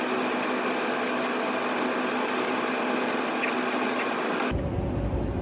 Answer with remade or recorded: recorded